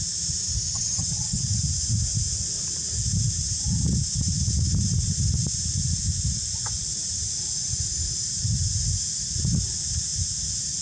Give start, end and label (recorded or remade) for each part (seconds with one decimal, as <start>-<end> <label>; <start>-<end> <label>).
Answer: 0.0-0.7 recorded; 0.7-1.4 remade; 1.4-10.8 recorded